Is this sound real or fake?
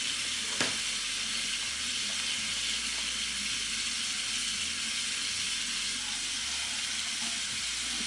real